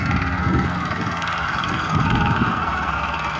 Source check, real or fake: fake